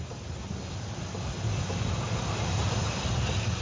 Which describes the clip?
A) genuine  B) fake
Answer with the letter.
A